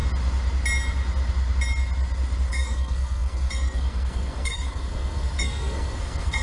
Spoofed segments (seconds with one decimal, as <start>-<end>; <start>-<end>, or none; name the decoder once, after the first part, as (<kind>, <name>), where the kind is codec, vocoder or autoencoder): 2.5-6.4 (codec, SNAC)